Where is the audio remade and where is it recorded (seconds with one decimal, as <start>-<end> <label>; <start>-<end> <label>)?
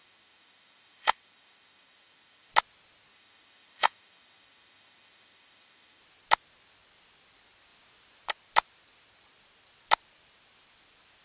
0.0-2.5 remade; 2.5-3.1 recorded; 3.1-6.0 remade; 6.0-11.2 recorded